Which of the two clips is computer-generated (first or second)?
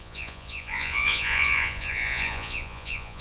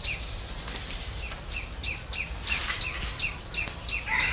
first